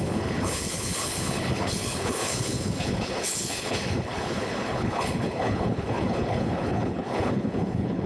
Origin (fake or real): fake